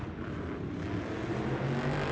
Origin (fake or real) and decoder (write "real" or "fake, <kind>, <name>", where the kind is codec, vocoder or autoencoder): real